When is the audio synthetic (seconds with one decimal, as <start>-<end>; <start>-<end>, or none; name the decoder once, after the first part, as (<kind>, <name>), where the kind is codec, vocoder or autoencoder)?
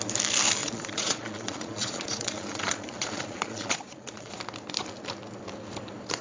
0.6-4.3 (vocoder, Vocos)